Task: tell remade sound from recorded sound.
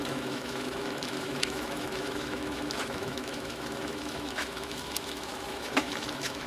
remade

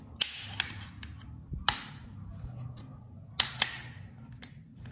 recorded